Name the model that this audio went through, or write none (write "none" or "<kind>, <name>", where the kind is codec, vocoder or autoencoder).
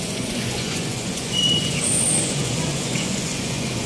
vocoder, Vocos